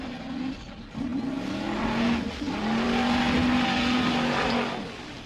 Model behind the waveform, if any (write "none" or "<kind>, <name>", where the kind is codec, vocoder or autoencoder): none